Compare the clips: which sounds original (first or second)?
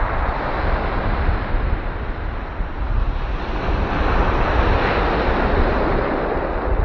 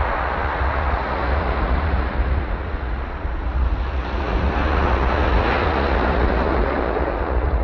first